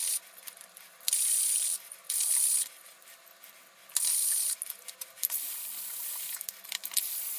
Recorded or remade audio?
recorded